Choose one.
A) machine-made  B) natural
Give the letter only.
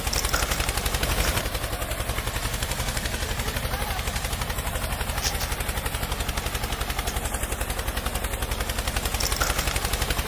B